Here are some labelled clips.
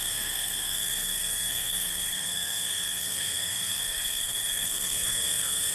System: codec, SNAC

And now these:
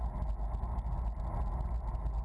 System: none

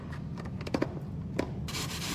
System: none